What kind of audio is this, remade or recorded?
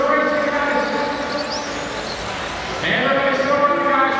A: recorded